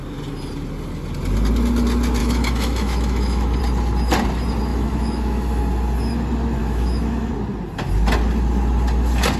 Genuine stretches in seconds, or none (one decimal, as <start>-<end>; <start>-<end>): 0.0-2.2; 3.6-4.7; 5.6-6.6; 7.3-9.4